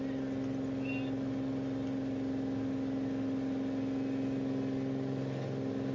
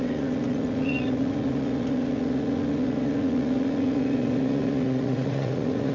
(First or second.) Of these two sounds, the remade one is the second